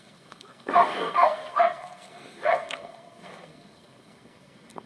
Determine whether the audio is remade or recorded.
remade